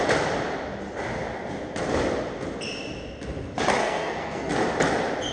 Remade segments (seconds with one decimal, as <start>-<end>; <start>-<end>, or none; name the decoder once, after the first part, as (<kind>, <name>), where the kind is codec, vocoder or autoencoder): 3.8-4.5 (codec, SNAC)